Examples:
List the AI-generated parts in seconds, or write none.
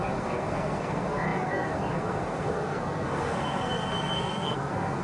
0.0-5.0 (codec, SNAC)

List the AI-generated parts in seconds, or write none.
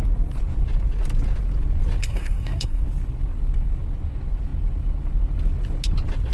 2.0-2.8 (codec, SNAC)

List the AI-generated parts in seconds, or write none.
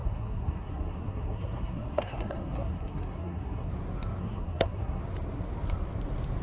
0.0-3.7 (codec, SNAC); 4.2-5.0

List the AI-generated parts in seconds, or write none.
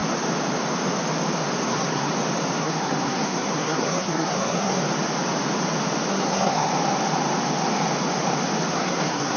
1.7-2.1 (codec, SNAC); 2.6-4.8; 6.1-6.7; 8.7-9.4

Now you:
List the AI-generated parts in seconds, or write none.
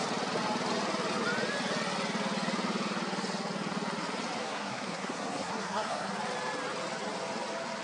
4.4-6.1 (codec, SNAC)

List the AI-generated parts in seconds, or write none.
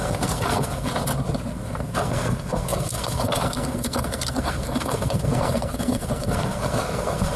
0.0-0.9 (codec, SNAC); 1.5-7.4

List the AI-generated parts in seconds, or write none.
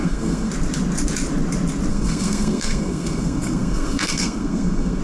0.0-0.5 (codec, SNAC); 1.9-5.0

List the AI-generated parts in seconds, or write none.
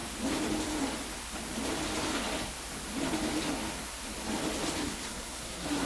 4.8-5.9 (codec, SNAC)